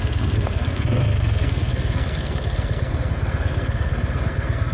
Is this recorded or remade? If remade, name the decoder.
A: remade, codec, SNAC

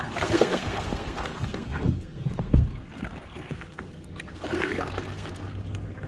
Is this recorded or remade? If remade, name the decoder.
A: remade, codec, SNAC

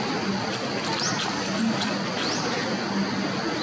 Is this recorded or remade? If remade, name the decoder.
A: recorded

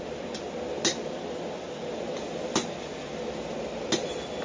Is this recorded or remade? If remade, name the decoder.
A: recorded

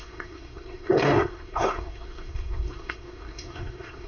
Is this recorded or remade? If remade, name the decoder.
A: remade, codec, SNAC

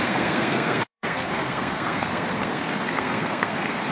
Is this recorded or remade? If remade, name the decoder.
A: remade, codec, SNAC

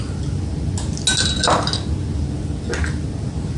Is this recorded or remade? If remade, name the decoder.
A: recorded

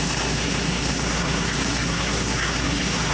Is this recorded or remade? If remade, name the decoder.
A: remade, codec, SNAC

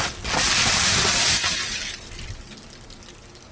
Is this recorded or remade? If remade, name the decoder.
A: recorded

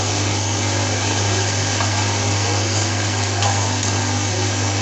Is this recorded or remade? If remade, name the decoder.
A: remade, codec, SNAC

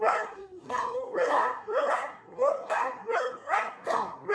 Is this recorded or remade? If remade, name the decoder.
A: remade, codec, SNAC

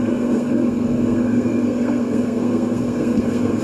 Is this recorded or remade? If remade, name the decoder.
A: remade, codec, SNAC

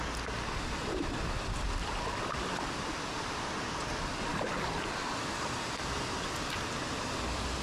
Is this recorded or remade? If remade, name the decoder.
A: recorded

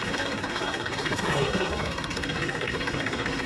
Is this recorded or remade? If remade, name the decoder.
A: remade, codec, SNAC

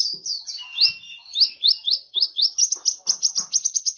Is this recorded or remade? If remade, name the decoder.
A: recorded